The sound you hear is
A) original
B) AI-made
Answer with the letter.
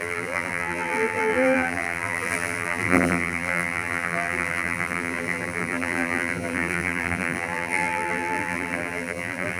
B